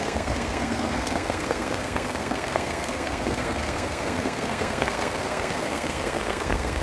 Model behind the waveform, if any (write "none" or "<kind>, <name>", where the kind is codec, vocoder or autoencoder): codec, SNAC